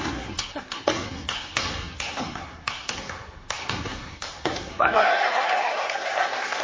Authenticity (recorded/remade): remade